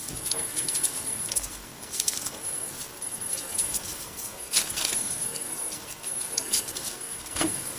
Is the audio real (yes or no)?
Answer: no